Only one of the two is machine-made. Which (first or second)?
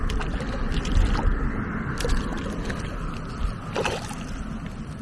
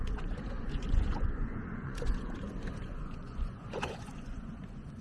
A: second